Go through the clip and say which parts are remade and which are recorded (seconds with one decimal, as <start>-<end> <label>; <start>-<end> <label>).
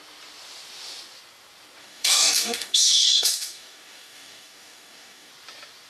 0.0-1.8 recorded; 1.8-5.3 remade; 5.3-5.9 recorded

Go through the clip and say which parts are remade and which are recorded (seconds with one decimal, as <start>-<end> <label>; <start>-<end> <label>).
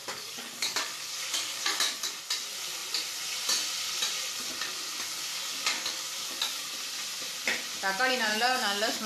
0.0-2.2 remade; 2.2-5.3 recorded; 5.3-6.7 remade; 6.7-8.3 recorded; 8.3-9.1 remade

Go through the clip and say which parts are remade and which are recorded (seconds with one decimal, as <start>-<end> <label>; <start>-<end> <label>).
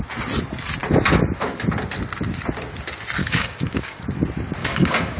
0.0-3.2 recorded; 3.2-4.0 remade; 4.0-4.6 recorded; 4.6-5.2 remade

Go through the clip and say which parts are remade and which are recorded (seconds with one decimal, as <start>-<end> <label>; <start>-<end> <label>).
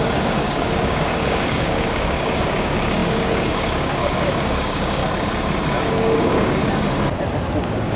0.0-5.0 remade; 5.0-5.8 recorded; 5.8-6.6 remade; 6.6-7.6 recorded; 7.6-8.0 remade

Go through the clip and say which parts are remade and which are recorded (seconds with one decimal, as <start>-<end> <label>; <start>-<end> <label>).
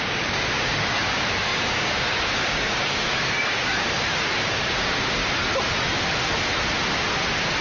0.0-5.2 remade; 5.2-7.6 recorded